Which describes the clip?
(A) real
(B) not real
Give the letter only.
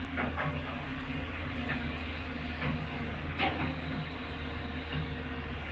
B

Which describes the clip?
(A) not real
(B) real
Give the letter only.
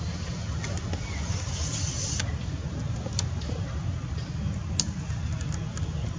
B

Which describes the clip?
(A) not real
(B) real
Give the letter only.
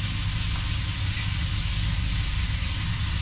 B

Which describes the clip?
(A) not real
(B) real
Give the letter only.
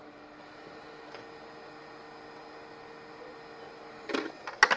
B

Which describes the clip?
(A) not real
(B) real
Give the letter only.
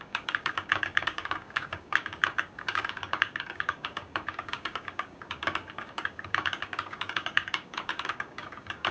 A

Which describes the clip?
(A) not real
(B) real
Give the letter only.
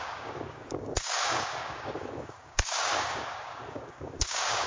A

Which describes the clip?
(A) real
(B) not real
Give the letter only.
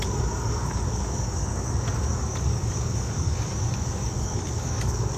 B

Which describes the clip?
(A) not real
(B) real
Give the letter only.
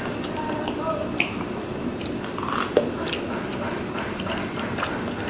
B